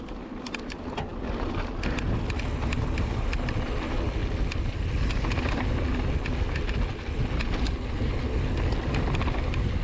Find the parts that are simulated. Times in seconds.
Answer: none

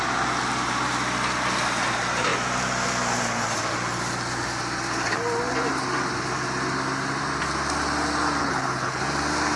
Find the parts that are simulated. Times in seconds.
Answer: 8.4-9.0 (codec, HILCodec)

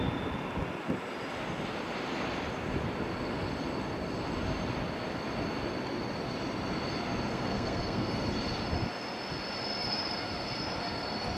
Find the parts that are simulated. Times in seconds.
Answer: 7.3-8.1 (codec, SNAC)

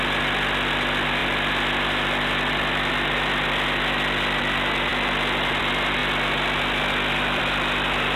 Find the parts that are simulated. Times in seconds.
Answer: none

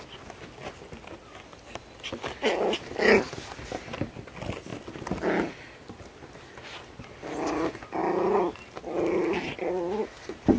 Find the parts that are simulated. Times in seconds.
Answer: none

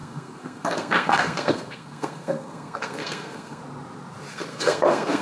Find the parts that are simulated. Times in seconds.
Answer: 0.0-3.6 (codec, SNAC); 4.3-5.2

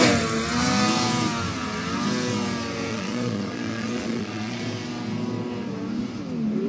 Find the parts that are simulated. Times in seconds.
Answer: 2.9-4.6 (vocoder, Vocos)